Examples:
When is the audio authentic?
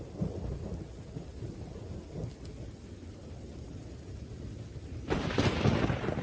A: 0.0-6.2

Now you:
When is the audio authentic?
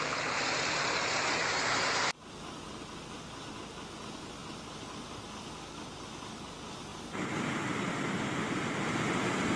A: 0.0-4.4; 5.0-9.6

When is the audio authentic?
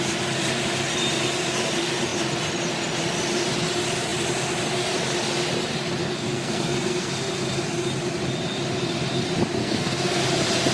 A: 0.0-6.0; 7.1-9.6; 10.2-10.7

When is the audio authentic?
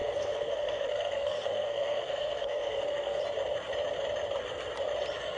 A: 3.2-5.4